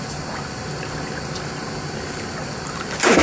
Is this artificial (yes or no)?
no